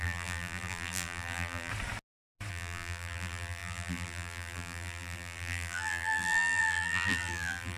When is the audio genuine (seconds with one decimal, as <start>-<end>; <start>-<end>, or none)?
1.7-2.5